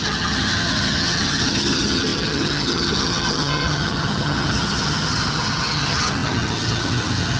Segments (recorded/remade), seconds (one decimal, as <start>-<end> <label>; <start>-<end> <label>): 0.0-7.4 remade

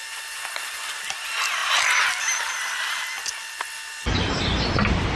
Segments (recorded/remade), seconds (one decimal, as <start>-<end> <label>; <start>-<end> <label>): 0.0-5.2 recorded

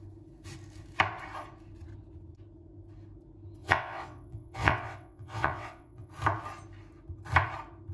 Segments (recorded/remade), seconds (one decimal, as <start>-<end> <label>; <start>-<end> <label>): 0.0-3.6 recorded; 3.6-6.1 remade; 6.1-7.9 recorded